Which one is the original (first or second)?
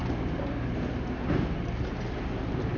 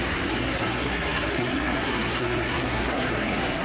first